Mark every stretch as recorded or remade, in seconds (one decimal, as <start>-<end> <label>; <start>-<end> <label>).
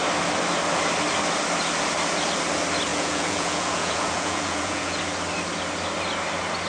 0.0-2.9 recorded; 2.9-5.0 remade; 5.0-6.7 recorded